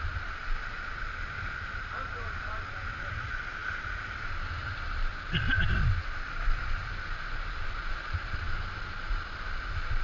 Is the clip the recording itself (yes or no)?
yes